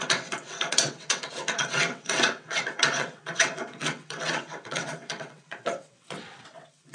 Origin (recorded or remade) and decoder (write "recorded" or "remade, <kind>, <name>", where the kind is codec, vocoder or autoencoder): remade, vocoder, WaveNeXt